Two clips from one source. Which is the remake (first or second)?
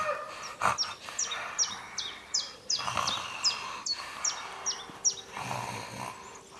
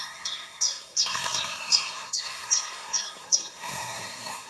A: second